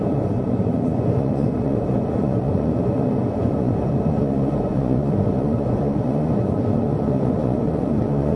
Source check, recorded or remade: remade